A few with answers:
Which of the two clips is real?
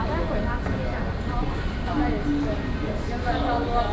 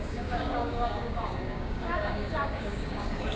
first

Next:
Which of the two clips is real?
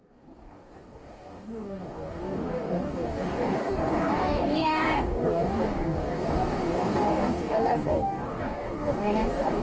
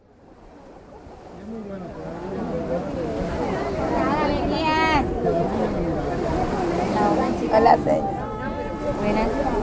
second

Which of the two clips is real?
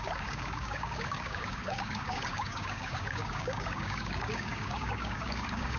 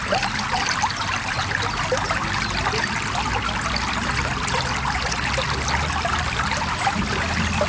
second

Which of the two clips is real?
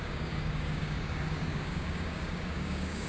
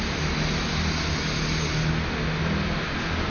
second